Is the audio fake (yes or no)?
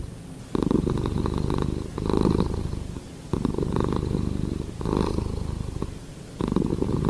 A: no